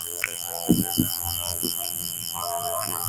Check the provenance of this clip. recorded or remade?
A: remade